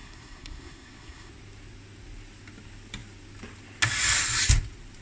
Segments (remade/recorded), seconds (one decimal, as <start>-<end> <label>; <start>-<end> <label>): 0.0-1.3 remade; 1.3-5.0 recorded